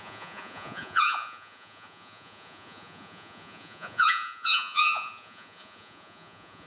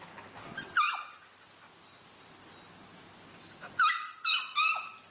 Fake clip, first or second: first